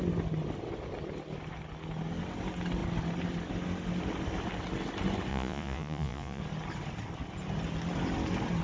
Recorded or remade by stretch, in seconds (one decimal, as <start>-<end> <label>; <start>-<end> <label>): 0.0-5.3 recorded; 5.3-6.4 remade; 6.4-8.6 recorded